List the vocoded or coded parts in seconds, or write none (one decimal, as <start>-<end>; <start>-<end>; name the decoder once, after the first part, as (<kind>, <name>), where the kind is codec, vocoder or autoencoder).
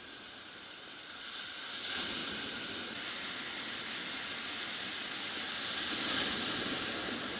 none